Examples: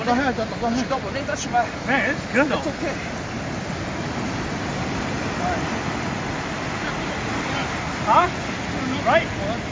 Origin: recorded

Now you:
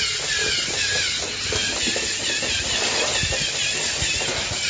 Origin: recorded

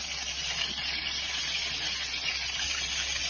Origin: recorded